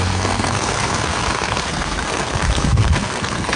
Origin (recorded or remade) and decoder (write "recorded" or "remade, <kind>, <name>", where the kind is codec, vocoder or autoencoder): remade, codec, SNAC